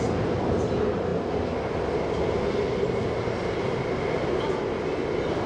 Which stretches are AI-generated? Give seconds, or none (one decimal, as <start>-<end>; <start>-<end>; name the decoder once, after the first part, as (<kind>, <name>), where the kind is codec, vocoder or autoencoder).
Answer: none